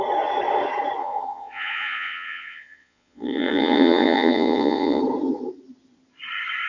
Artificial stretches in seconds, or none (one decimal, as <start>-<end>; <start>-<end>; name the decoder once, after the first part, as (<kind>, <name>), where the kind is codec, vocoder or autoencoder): 1.0-5.0 (vocoder, Vocos)